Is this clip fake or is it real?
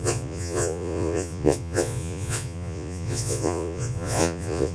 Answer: fake